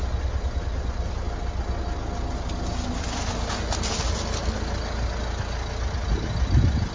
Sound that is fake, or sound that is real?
real